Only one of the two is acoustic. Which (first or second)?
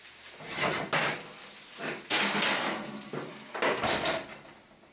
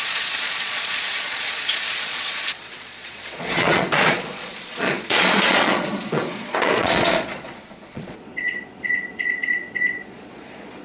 first